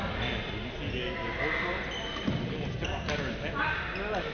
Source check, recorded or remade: recorded